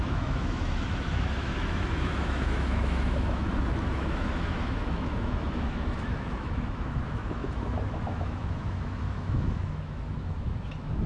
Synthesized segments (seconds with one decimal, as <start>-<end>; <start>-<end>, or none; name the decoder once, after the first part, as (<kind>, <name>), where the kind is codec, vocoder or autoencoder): 0.0-11.1 (autoencoder, DAC-VAE)